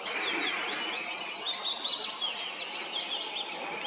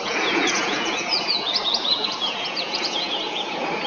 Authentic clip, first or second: first